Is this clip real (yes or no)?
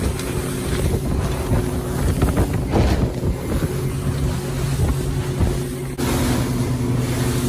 yes